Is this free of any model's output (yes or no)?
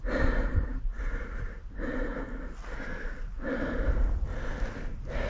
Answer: yes